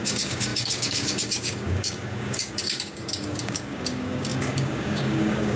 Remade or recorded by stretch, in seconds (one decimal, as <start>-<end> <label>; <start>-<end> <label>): 0.0-5.6 remade